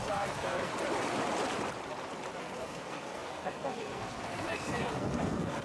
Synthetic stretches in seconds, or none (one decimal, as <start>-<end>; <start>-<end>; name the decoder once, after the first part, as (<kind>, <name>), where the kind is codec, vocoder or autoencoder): 0.0-0.7 (codec, SNAC); 2.4-5.6